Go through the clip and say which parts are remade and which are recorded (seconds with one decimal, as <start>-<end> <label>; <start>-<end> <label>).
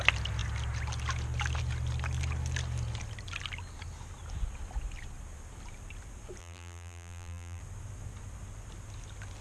0.0-6.4 recorded; 6.4-7.6 remade; 7.6-9.4 recorded